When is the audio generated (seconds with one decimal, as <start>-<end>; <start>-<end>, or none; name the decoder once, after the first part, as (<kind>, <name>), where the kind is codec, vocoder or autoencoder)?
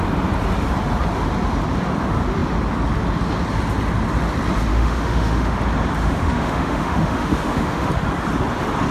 4.7-5.6 (autoencoder, DAC-VAE); 6.0-7.9